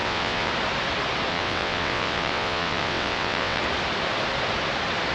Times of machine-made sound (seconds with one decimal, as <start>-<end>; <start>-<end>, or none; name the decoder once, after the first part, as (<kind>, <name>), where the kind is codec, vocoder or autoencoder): 0.0-0.5 (vocoder, WaveNeXt); 1.3-3.6